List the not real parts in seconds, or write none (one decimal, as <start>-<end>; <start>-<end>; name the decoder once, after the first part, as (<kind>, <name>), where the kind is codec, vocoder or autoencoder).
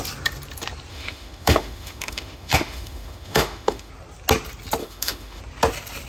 0.9-3.9 (autoencoder, DAC-VAE); 4.8-5.4